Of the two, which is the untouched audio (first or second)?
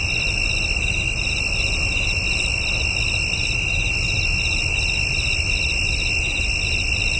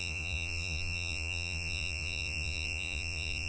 first